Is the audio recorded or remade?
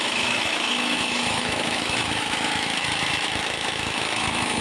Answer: remade